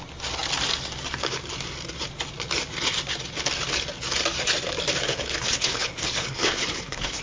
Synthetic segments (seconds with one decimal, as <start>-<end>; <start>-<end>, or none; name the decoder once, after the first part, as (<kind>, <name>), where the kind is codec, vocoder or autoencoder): 5.1-7.2 (codec, HILCodec)